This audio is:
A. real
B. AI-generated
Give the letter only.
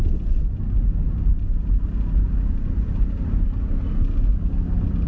A